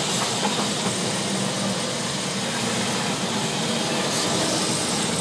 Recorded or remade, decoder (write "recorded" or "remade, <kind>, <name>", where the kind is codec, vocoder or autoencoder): recorded